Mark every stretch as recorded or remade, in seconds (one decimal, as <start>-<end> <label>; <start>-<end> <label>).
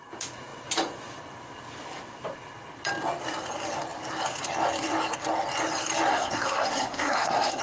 0.0-6.1 recorded; 6.1-7.6 remade